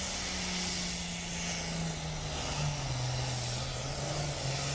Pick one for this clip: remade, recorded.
recorded